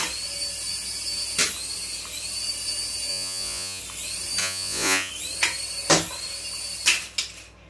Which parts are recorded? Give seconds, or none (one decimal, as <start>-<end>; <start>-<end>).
0.0-3.1; 3.8-4.4; 5.1-7.7